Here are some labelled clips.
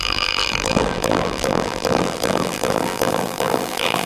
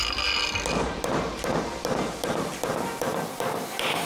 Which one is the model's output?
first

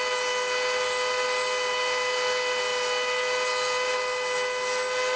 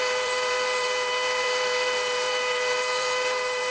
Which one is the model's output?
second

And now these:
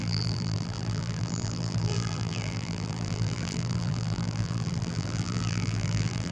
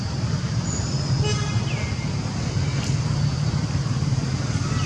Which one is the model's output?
first